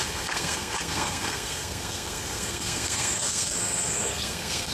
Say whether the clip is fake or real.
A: fake